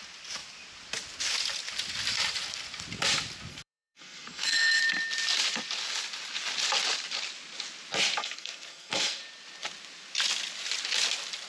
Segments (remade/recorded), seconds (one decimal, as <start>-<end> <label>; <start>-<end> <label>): 0.0-3.5 recorded; 3.5-4.8 remade; 4.8-8.2 recorded; 8.2-9.2 remade; 9.2-11.5 recorded